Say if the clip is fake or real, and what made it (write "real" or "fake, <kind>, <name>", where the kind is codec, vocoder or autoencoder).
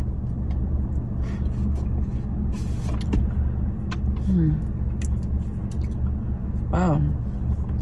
real